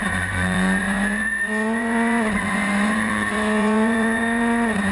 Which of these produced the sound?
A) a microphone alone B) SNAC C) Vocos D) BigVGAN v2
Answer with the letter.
C